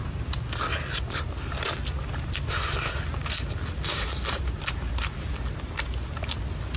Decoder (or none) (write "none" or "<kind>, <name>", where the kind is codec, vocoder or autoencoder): none